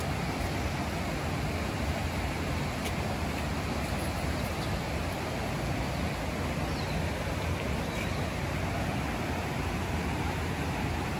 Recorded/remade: recorded